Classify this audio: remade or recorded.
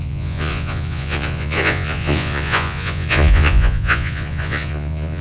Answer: remade